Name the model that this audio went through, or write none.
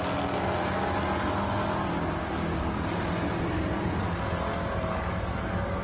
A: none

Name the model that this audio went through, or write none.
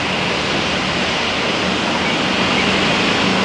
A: none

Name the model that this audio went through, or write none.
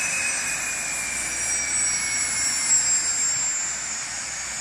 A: none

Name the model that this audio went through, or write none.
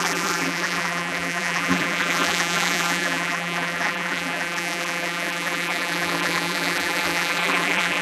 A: vocoder, BigVGAN v2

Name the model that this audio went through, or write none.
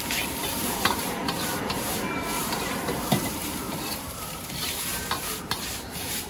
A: vocoder, BigVGAN v2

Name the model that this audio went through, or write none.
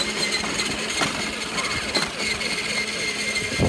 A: none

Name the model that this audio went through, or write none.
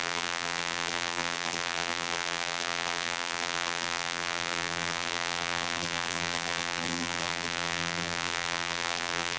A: vocoder, BigVGAN v2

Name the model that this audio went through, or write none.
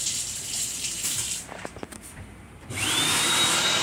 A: vocoder, BigVGAN v2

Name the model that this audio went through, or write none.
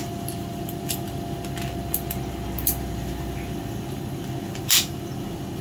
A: none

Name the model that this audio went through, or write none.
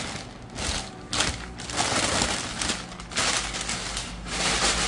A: none